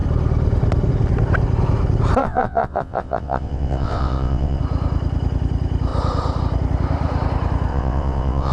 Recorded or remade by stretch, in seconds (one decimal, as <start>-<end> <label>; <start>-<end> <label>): 0.0-2.2 recorded; 2.2-4.6 remade; 4.6-7.7 recorded; 7.7-8.5 remade